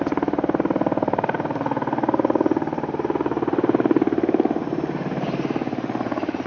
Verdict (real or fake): fake